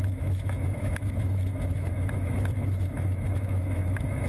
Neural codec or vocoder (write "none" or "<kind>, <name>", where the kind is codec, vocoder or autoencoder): autoencoder, DAC-VAE